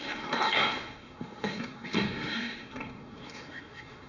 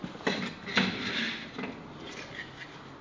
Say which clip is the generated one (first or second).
first